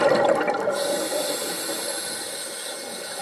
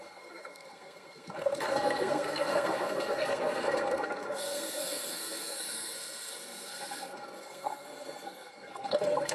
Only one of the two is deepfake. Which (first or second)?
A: second